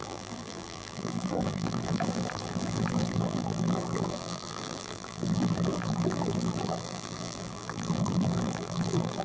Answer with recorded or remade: remade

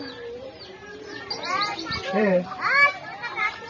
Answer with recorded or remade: remade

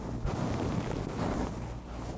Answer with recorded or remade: recorded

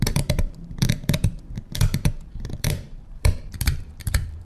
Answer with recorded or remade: remade